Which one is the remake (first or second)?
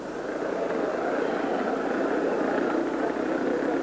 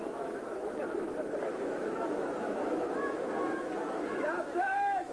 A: second